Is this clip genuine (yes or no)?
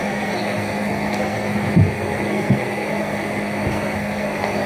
no